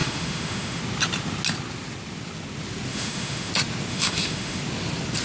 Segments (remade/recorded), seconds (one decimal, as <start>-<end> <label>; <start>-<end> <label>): 0.0-0.8 remade; 0.8-2.9 recorded; 2.9-3.5 remade; 3.5-3.9 recorded; 3.9-4.6 remade; 4.6-5.2 recorded